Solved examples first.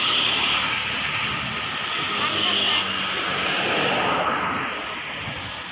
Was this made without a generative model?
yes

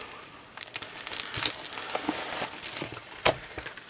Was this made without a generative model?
yes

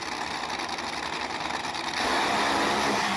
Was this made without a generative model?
yes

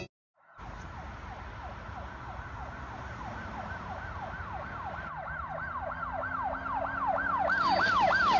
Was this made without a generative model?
yes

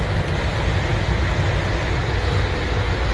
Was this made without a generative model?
yes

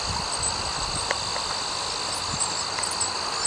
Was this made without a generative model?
yes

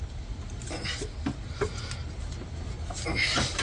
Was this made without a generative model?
yes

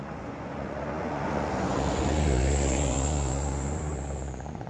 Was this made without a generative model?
no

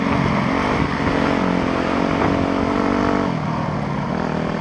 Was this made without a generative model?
yes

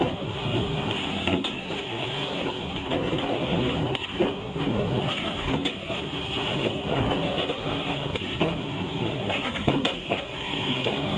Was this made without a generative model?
no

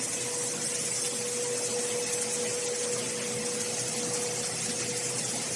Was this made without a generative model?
yes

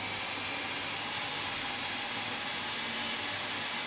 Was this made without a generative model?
yes